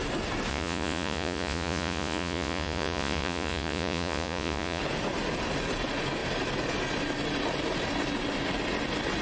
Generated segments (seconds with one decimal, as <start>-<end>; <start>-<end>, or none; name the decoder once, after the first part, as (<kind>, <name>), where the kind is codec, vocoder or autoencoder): 0.5-4.8 (vocoder, Vocos)

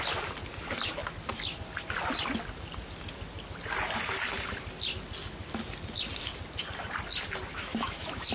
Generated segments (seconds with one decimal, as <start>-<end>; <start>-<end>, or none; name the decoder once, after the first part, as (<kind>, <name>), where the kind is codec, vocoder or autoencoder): 7.5-8.3 (autoencoder, DAC-VAE)

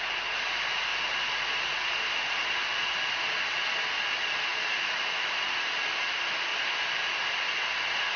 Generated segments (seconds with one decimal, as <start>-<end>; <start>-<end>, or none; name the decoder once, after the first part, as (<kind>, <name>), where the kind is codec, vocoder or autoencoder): 6.5-7.0 (vocoder, BigVGAN v2)

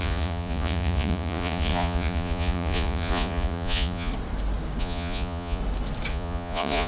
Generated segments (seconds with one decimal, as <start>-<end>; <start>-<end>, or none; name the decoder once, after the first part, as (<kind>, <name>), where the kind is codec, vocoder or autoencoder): 0.0-4.1 (vocoder, Vocos); 4.8-5.6; 6.1-6.9

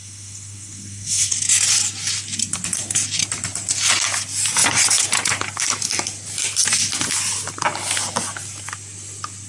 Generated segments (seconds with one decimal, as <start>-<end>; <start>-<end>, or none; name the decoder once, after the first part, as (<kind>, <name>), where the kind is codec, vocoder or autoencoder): 0.0-1.3 (codec, SNAC)

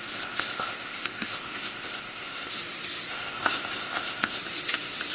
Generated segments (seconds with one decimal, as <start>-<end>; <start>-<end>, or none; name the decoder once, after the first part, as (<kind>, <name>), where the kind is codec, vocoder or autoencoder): 0.0-2.5 (codec, ZipCodec); 3.1-4.4

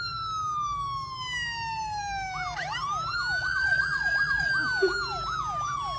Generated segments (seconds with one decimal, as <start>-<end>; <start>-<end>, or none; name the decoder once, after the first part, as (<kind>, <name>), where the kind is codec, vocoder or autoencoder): 3.4-4.5 (vocoder, Vocos)

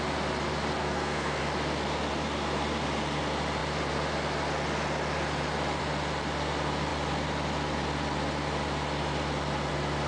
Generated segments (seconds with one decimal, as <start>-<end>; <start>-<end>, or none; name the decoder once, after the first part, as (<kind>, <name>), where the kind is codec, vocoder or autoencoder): 0.8-1.4 (codec, SNAC)